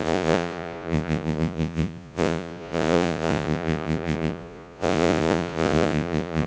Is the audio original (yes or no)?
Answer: no